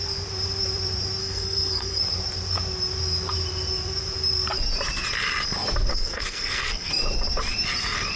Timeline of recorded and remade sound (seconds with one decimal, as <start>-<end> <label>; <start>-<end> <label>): 0.0-1.2 recorded; 1.2-2.0 remade; 2.0-5.9 recorded; 5.9-6.9 remade; 6.9-8.2 recorded